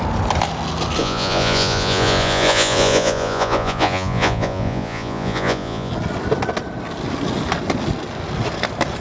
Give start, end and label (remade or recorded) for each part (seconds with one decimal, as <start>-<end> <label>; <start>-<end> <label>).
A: 0.0-1.0 recorded; 1.0-5.9 remade; 5.9-9.0 recorded